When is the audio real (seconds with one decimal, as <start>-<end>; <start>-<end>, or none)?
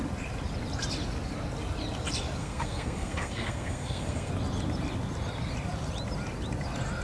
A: 0.0-2.4; 4.3-7.0